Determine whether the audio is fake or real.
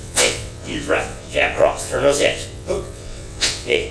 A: fake